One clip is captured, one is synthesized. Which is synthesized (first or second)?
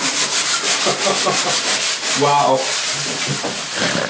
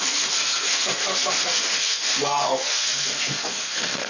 second